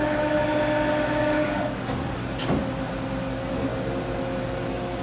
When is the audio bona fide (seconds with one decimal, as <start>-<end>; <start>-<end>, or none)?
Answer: 0.4-1.2; 2.2-3.3; 3.7-4.4